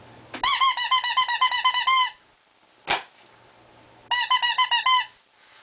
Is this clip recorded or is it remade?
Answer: recorded